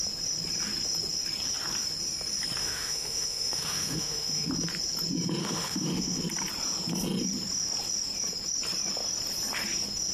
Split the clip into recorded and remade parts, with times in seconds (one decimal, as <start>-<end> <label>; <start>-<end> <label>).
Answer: 0.0-2.6 recorded; 2.6-4.5 remade; 4.5-5.4 recorded; 5.4-6.2 remade; 6.2-10.1 recorded